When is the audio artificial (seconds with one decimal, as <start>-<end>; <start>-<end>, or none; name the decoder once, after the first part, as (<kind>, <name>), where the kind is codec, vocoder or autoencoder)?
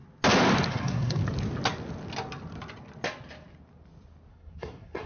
0.7-1.2 (codec, SNAC); 4.3-5.1